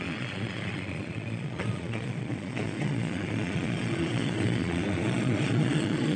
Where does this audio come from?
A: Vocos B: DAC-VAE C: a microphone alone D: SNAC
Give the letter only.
A